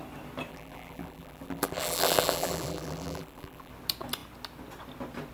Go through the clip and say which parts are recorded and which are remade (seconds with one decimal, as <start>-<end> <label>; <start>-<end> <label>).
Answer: 0.0-0.5 recorded; 0.5-3.7 remade; 3.7-5.3 recorded